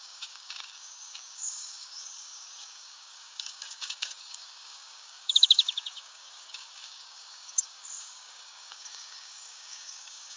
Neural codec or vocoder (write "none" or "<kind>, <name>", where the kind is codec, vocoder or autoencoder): codec, DAC